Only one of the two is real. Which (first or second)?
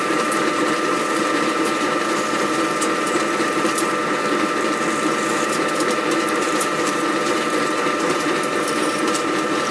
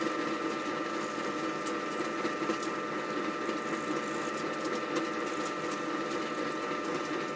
second